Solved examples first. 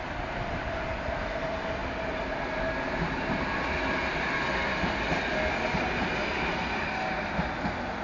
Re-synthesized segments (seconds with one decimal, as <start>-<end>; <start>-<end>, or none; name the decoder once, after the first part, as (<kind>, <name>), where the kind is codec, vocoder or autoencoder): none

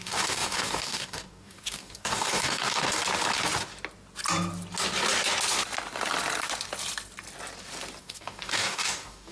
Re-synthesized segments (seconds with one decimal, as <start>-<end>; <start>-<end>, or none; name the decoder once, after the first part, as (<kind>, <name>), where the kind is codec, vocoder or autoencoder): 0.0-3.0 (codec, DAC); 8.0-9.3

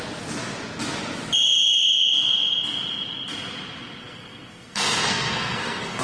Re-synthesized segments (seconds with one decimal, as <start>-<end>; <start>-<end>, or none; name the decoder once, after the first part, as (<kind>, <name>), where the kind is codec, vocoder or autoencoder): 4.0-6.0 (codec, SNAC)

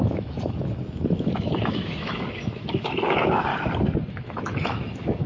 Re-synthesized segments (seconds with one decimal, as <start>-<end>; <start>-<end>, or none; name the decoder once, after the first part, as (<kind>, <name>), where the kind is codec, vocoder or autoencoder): 0.0-3.5 (autoencoder, DAC-VAE); 4.1-5.3

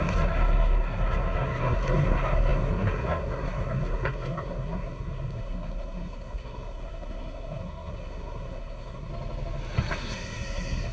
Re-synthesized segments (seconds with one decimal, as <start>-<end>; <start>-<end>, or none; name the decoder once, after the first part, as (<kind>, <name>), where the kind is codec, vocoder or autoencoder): 0.0-9.1 (codec, SNAC); 9.9-10.9